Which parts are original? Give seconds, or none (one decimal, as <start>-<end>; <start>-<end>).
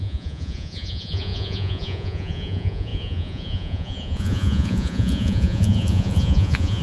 none